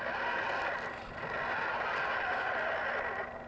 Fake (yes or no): no